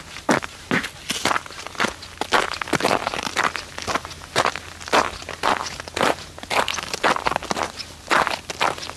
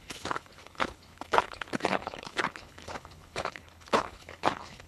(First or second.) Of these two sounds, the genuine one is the first